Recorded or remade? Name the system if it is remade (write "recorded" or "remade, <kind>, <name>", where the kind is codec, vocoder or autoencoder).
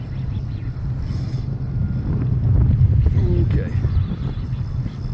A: recorded